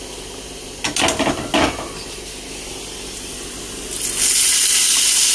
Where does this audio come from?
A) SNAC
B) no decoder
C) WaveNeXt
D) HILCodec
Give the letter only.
B